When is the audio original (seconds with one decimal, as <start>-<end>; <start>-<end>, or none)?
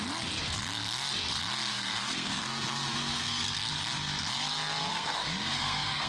0.0-1.7; 3.7-4.9